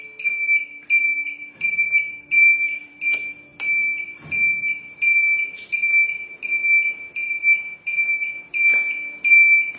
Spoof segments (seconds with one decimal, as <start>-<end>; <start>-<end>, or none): 1.4-3.0; 3.5-4.0